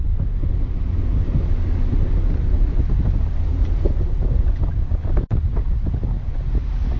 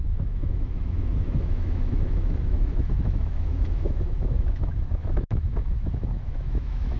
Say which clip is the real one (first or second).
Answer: first